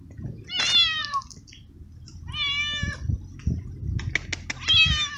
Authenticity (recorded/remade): recorded